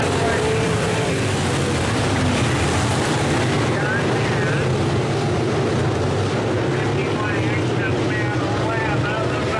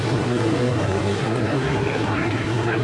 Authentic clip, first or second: first